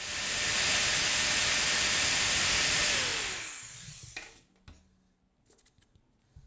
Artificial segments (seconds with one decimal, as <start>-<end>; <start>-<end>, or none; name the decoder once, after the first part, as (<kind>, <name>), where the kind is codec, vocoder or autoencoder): none